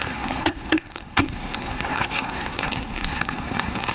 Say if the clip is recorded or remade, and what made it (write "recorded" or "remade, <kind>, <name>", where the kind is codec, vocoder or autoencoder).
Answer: remade, codec, SNAC